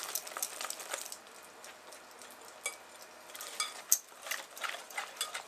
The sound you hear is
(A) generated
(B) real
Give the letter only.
B